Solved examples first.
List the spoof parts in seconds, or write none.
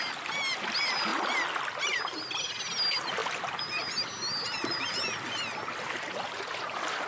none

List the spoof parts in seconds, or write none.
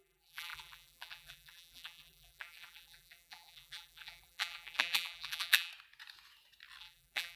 0.0-5.7 (vocoder, BigVGAN v2); 6.8-7.4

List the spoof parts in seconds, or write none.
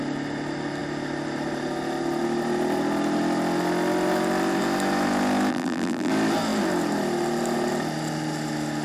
5.5-6.1 (vocoder, BigVGAN v2)